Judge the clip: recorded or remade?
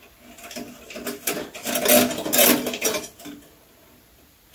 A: recorded